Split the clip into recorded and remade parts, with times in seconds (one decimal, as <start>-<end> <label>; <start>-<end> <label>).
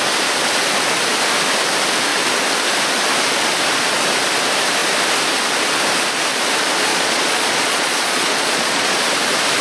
0.0-6.9 recorded; 6.9-9.0 remade; 9.0-9.6 recorded